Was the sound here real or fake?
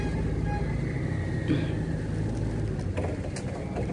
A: real